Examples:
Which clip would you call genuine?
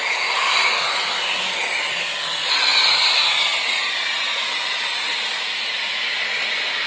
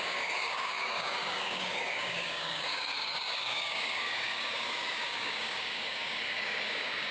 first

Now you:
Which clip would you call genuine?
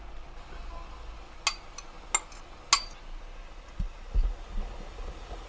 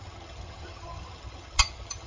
first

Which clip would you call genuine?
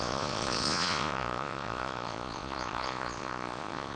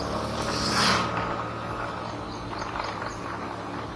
second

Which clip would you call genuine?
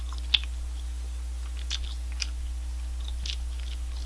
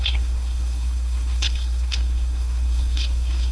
first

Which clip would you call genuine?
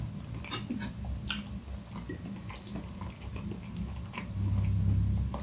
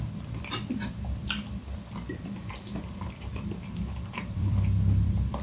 first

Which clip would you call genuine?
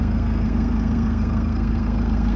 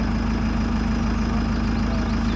second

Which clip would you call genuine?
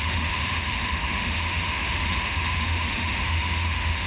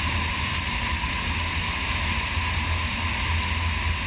second